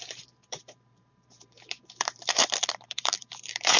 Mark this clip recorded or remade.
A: remade